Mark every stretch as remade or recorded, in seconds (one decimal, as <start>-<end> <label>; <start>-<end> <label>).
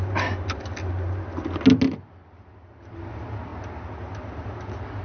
0.0-5.0 recorded